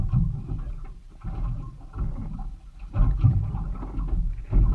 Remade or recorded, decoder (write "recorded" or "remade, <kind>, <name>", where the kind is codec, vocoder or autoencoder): recorded